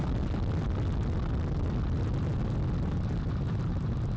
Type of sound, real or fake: real